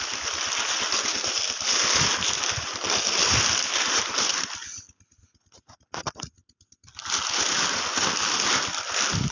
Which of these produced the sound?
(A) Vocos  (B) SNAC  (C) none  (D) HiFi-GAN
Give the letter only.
C